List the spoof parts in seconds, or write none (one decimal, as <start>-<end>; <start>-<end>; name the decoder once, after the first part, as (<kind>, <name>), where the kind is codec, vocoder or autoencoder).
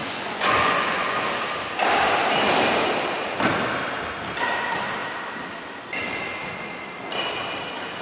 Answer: 0.0-1.3 (vocoder, Vocos)